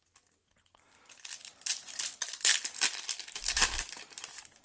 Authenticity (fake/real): real